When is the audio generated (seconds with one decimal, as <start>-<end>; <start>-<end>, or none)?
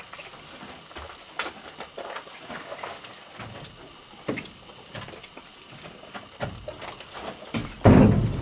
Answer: none